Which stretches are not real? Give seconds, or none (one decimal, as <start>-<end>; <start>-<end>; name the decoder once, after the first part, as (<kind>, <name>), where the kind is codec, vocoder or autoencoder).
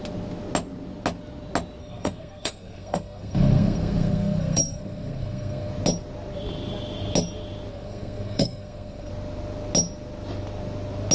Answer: 1.8-5.7 (codec, SNAC); 7.7-9.1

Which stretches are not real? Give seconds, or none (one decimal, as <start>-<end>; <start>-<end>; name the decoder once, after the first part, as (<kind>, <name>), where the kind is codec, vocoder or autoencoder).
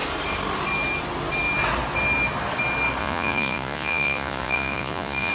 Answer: 3.0-5.3 (vocoder, Vocos)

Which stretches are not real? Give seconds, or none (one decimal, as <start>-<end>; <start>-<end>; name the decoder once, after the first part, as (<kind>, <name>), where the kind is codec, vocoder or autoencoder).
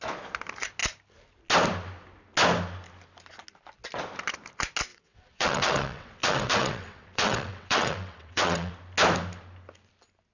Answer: 4.9-8.7 (vocoder, WaveNeXt)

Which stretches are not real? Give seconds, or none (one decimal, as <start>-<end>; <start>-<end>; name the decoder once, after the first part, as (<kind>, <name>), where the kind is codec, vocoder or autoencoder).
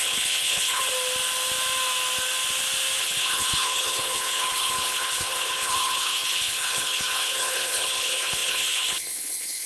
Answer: 0.0-0.8 (codec, HILCodec); 3.0-9.7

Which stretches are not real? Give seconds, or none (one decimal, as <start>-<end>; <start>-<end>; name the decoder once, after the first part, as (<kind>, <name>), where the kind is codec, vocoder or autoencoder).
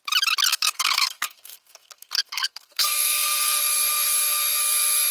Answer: 0.5-3.6 (codec, SNAC)